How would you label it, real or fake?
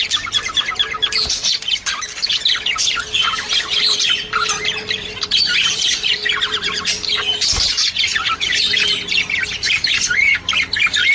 fake